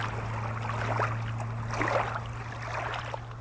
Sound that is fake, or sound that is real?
real